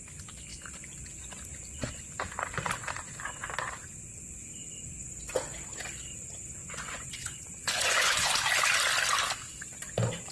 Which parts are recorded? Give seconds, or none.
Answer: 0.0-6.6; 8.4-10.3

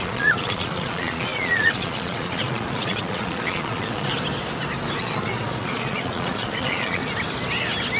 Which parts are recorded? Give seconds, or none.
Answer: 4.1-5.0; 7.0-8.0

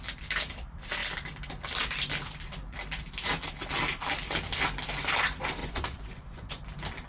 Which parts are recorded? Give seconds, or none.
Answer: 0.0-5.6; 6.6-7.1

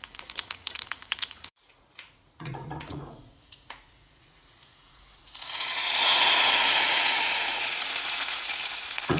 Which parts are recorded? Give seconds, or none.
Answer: none